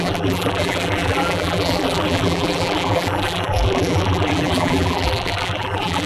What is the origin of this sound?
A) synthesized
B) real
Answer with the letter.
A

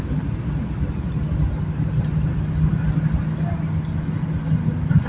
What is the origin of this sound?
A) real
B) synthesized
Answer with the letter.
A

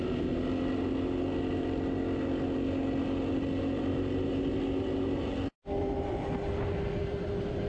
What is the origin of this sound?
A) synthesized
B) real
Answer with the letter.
B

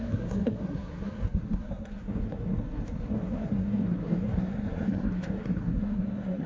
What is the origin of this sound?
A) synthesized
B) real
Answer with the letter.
A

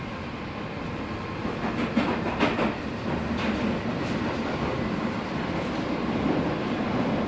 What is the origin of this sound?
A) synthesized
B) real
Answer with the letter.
B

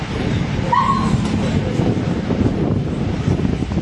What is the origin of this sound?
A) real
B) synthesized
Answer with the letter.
A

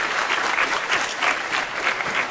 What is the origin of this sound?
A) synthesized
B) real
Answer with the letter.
A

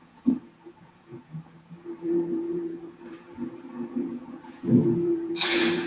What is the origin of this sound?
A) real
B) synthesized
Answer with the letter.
B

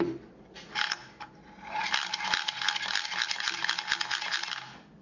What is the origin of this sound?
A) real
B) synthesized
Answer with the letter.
A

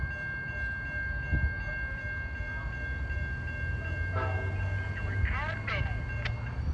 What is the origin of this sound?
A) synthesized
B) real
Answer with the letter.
B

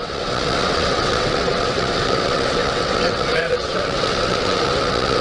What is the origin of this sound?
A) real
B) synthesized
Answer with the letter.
B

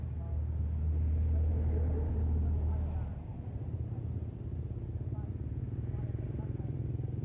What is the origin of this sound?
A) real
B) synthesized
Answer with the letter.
A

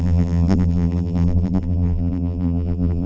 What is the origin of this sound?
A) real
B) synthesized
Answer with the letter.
B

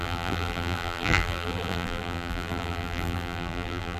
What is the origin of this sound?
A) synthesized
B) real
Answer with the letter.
A